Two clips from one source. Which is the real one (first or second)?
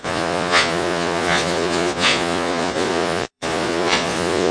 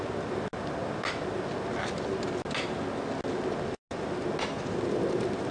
second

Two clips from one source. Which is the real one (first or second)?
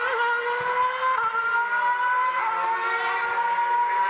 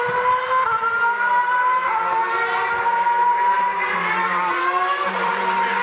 first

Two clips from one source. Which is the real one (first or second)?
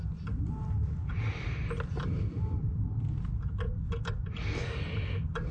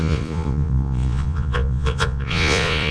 first